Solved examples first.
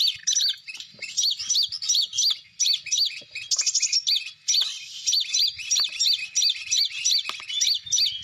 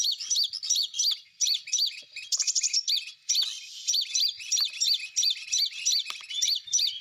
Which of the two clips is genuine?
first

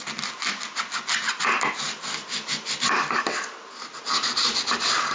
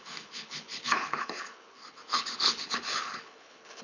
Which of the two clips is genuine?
first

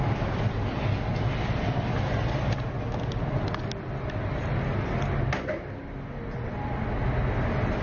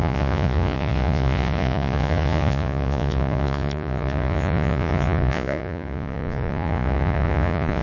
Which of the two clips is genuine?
first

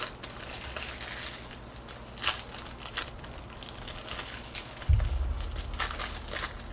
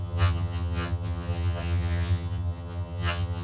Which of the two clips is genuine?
first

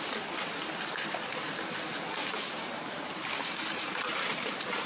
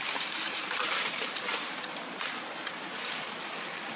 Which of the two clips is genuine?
first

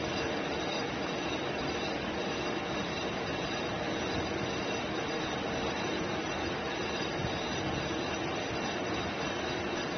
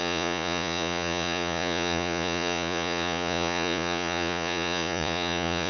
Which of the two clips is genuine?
first